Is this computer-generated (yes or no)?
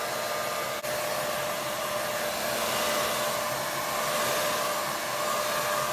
no